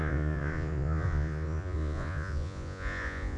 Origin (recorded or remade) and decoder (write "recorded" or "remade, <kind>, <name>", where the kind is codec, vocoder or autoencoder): remade, vocoder, Vocos